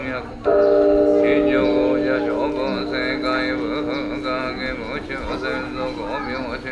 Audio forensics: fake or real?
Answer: real